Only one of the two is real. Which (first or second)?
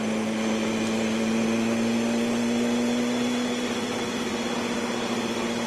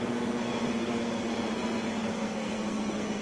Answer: first